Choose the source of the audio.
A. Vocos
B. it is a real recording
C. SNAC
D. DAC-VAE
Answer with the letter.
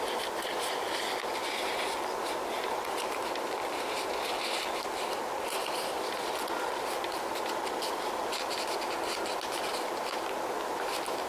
B